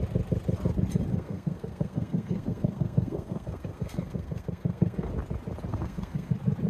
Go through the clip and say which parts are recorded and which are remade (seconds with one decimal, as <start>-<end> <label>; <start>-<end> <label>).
0.0-1.1 recorded; 1.1-5.1 remade; 5.1-5.7 recorded; 5.7-6.3 remade; 6.3-6.7 recorded